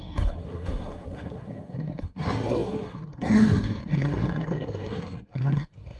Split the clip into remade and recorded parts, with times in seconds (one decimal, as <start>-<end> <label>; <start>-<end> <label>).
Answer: 0.0-6.0 remade